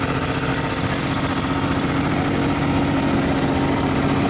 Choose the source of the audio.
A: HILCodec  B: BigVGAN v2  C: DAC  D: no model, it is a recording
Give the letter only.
D